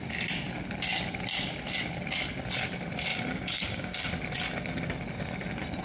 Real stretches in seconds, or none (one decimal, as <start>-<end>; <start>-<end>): 0.0-3.1; 4.1-5.8